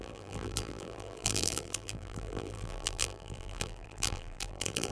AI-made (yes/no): yes